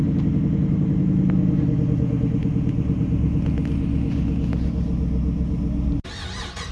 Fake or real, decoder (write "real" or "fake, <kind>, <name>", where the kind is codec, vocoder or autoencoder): real